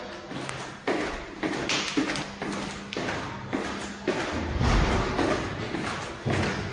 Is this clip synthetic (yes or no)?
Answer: no